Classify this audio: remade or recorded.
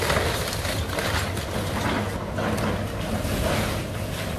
recorded